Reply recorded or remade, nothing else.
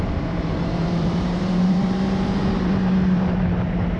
remade